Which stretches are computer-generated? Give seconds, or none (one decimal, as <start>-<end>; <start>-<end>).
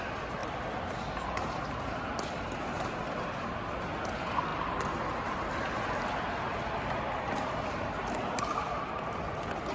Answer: 4.5-8.8